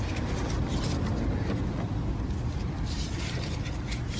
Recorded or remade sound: recorded